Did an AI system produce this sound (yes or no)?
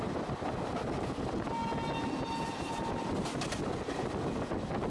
no